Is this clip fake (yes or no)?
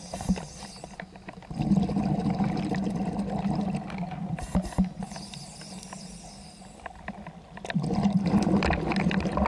no